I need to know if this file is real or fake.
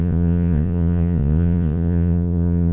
fake